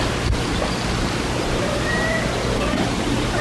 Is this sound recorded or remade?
recorded